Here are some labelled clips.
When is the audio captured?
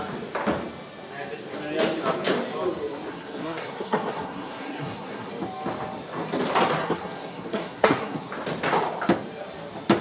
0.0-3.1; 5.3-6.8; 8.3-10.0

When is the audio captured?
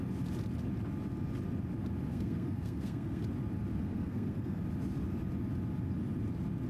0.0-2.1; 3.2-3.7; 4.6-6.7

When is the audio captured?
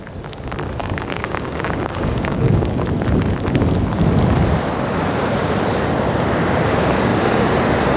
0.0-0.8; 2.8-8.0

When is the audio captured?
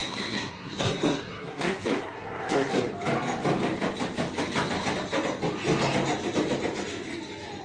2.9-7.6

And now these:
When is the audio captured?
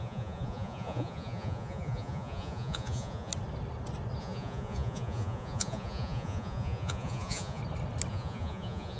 3.3-4.2; 7.6-8.1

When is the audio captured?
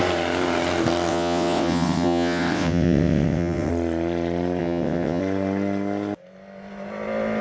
0.0-1.1; 3.7-4.6; 5.2-7.4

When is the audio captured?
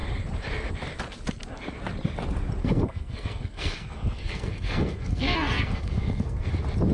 0.0-2.6; 6.5-6.9